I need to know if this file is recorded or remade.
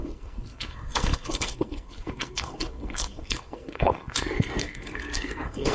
remade